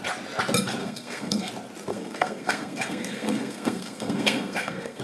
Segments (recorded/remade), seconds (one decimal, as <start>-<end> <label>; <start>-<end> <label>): 0.0-0.8 recorded; 0.8-1.5 remade; 1.5-1.9 recorded; 1.9-5.0 remade